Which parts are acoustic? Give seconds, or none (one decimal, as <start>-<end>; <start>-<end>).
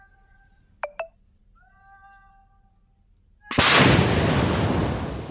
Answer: 0.0-5.3